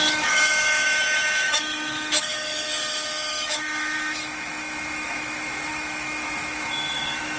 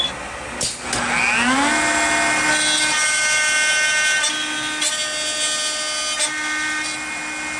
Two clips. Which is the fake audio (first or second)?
first